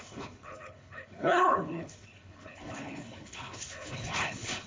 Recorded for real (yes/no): no